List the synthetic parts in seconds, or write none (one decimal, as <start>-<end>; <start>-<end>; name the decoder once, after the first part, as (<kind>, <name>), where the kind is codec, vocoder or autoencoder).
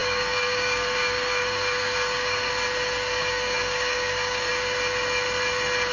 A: 0.0-2.5 (codec, DAC); 3.2-4.5